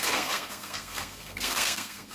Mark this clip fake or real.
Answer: fake